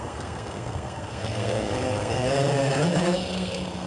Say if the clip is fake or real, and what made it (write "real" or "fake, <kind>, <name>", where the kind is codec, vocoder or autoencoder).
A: fake, codec, SNAC